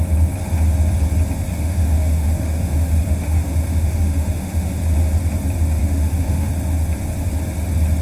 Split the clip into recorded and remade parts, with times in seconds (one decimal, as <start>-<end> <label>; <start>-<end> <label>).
0.0-1.5 recorded; 1.5-4.8 remade; 4.8-5.8 recorded; 5.8-6.5 remade; 6.5-8.0 recorded